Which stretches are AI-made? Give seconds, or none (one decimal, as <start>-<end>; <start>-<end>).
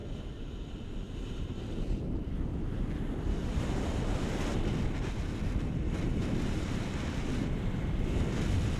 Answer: none